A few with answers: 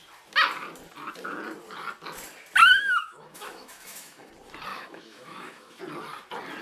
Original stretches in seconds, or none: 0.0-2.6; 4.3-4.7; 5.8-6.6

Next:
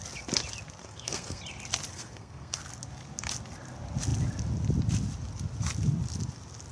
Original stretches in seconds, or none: 0.0-0.8; 1.4-1.9; 2.6-6.7

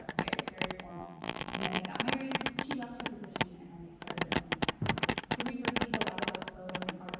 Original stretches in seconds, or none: 0.0-0.9; 1.8-7.2

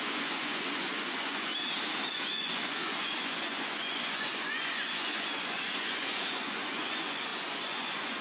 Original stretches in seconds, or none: 1.5-2.1

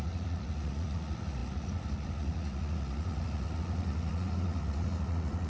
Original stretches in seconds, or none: none

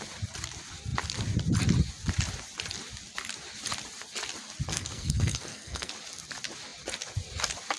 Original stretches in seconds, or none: 0.0-4.7; 5.9-7.8